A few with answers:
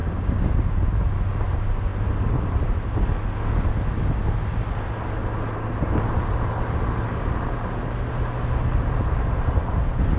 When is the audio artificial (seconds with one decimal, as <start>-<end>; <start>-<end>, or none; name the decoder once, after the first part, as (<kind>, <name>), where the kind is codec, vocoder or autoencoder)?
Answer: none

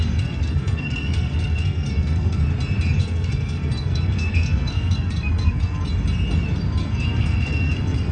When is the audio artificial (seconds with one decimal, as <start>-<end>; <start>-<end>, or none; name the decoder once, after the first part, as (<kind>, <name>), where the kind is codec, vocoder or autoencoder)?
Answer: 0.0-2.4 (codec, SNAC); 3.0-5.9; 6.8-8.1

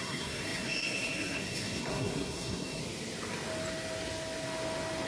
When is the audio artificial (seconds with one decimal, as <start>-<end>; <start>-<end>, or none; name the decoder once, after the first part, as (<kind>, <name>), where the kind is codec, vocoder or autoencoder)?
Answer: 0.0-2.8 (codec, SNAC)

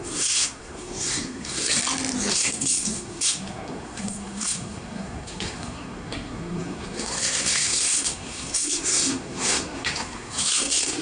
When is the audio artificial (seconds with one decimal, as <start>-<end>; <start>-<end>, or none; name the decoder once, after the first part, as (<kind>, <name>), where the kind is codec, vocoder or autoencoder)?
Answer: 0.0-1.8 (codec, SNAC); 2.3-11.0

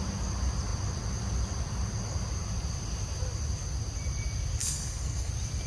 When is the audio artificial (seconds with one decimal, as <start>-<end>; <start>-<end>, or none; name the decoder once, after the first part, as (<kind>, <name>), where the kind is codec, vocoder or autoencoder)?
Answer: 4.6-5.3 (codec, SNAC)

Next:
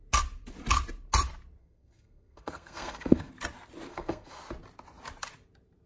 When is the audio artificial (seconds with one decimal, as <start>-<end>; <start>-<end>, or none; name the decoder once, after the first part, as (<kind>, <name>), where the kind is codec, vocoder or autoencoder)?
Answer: 1.6-3.3 (codec, SNAC); 3.9-4.4

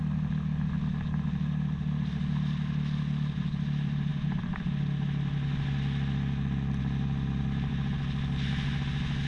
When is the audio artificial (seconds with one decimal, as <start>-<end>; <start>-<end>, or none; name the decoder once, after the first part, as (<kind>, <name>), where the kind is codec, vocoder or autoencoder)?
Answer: none